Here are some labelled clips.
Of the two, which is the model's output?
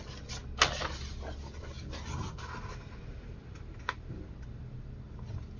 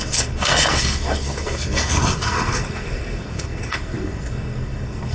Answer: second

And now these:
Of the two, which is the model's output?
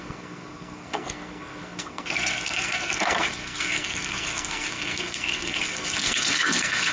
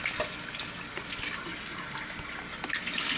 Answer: first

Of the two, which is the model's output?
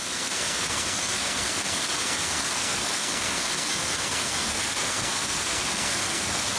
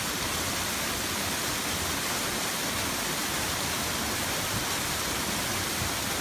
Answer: first